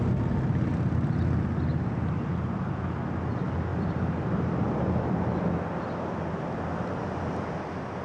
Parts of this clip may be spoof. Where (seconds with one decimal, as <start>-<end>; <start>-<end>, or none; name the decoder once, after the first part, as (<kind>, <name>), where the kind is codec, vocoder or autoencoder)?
none